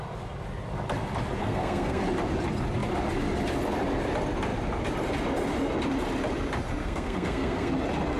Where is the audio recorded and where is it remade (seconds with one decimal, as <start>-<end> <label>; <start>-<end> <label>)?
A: 0.0-1.4 recorded; 1.4-2.0 remade; 2.0-6.8 recorded; 6.8-7.7 remade; 7.7-8.2 recorded